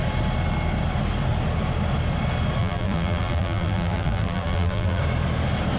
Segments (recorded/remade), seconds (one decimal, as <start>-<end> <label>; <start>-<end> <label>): 0.0-2.6 recorded; 2.6-5.0 remade; 5.0-5.8 recorded